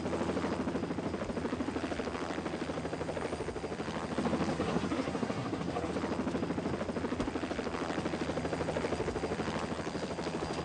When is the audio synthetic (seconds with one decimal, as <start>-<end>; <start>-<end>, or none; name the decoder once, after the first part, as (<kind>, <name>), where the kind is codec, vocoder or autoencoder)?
4.5-5.9 (codec, SNAC)